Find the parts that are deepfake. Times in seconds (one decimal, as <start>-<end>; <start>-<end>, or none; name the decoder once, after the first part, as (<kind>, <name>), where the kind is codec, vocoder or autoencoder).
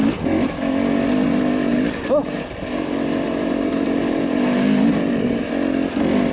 1.7-5.5 (vocoder, BigVGAN v2)